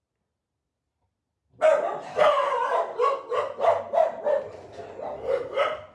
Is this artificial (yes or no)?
no